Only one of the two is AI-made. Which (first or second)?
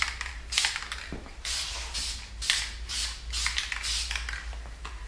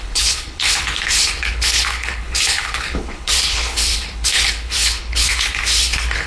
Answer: second